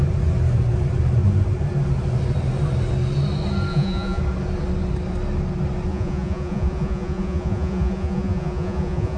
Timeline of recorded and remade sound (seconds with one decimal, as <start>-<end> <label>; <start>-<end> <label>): 0.0-3.7 recorded; 3.7-4.2 remade; 4.2-5.9 recorded; 5.9-9.2 remade